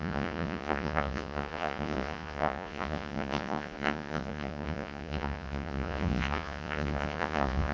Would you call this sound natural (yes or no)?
no